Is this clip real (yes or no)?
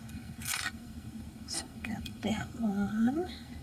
no